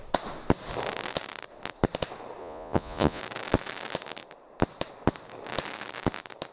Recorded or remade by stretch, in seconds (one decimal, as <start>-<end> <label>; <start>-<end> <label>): 0.0-2.4 recorded; 2.4-3.2 remade; 3.2-6.5 recorded